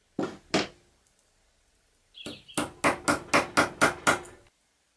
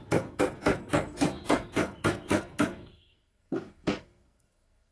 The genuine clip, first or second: first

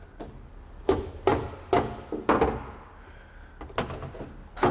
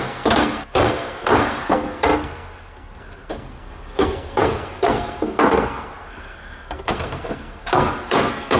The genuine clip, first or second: first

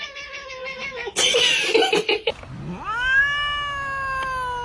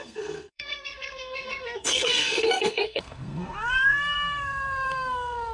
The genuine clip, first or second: first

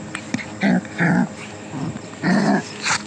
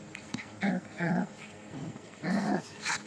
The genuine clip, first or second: first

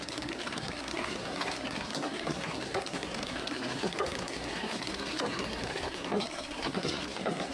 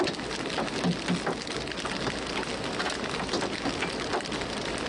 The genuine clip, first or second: second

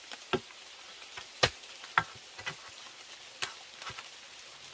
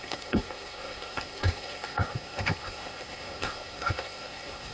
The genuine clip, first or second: first